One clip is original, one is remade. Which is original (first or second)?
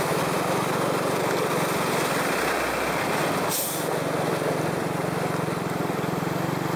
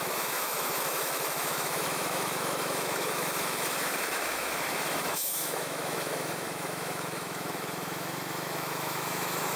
first